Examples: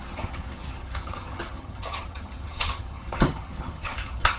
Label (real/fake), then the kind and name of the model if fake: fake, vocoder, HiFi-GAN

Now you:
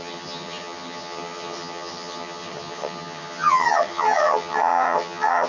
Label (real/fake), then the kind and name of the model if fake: fake, vocoder, HiFi-GAN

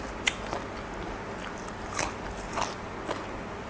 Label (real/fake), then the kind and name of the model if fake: real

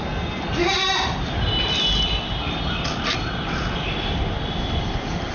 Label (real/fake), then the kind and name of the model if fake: real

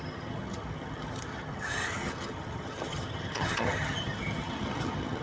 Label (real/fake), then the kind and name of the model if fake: fake, vocoder, HiFi-GAN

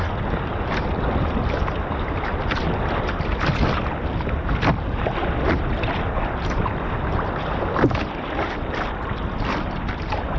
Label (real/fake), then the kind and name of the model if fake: real